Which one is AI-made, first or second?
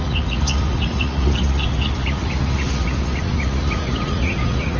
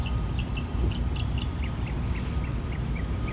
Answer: first